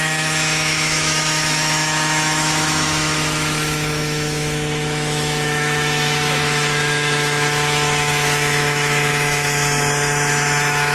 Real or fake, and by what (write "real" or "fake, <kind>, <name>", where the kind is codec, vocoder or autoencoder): fake, autoencoder, DAC-VAE